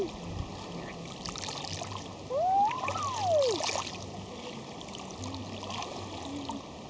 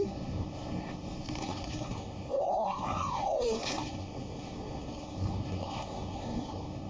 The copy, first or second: second